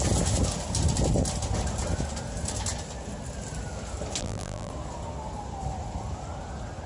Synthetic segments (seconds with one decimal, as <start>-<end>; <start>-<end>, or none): 4.2-4.7